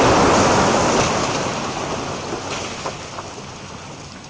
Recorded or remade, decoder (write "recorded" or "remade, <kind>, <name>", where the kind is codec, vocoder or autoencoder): recorded